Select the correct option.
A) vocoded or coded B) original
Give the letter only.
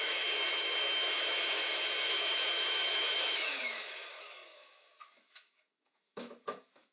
A